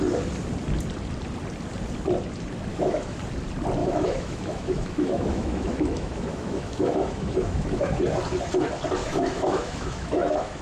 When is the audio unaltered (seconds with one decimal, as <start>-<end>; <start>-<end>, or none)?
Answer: 0.0-2.7; 3.2-3.8; 8.0-9.0